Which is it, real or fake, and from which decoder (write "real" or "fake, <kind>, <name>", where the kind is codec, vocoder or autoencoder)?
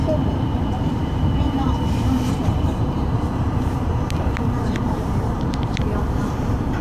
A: fake, vocoder, BigVGAN v2